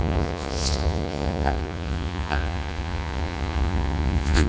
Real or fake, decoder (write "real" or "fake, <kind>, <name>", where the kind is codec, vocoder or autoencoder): fake, vocoder, Vocos